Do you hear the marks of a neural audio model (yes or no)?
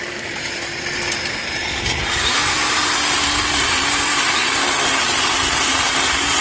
no